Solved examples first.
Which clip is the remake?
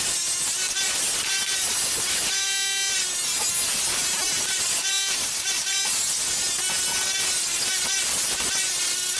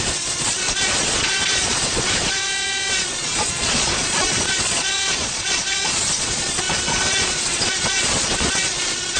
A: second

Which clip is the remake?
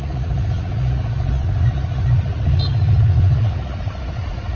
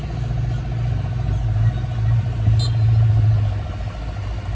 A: first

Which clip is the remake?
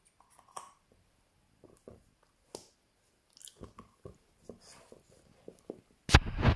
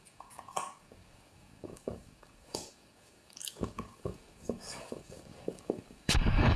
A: second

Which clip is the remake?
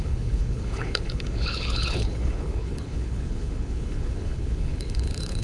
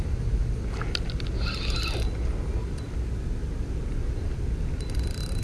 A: first